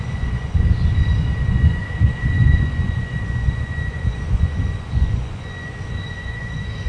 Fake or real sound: fake